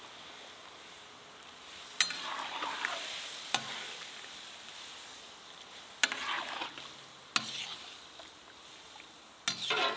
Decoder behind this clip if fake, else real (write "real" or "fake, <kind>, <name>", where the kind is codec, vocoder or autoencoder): real